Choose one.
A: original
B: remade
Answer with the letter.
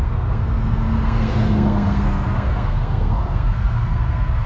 B